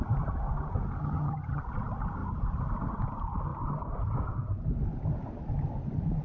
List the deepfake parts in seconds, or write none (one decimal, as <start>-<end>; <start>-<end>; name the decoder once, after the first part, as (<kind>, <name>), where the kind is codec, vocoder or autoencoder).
1.0-1.6 (vocoder, HiFi-GAN)